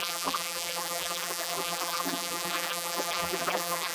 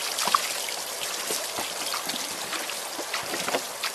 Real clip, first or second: second